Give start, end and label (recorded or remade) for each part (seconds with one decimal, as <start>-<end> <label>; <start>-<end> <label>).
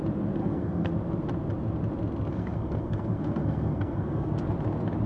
0.0-0.4 recorded; 0.4-0.9 remade; 0.9-2.3 recorded; 2.3-4.3 remade; 4.3-5.1 recorded